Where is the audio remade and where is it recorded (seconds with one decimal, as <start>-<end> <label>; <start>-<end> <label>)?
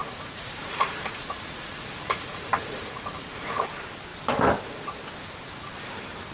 0.0-3.6 remade; 3.6-6.3 recorded